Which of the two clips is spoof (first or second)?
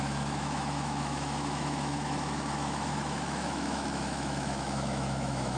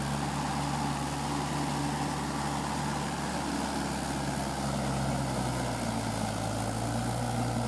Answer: first